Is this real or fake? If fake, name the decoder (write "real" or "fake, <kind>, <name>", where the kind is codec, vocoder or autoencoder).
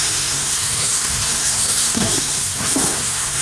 fake, codec, SNAC